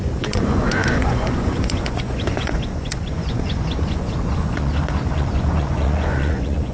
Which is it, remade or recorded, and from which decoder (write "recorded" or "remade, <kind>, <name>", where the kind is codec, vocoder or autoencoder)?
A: remade, vocoder, Vocos